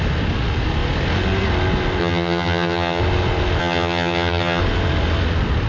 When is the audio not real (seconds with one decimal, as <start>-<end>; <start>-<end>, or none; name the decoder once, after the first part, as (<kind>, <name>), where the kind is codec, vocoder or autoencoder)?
2.0-3.0 (vocoder, HiFi-GAN); 3.6-4.6